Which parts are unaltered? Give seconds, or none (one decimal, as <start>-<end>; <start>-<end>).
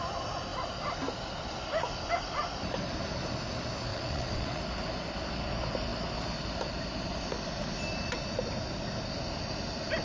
0.0-3.9; 4.6-10.0